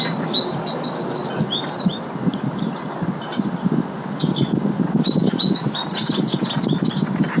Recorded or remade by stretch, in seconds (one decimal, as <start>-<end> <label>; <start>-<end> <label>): 0.0-6.0 recorded; 6.0-7.4 remade